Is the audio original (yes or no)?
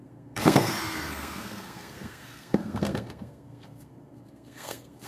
no